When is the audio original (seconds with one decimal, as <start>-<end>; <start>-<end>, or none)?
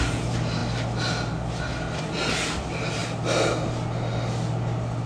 0.0-5.1